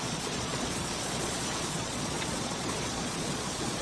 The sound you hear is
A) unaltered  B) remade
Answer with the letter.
B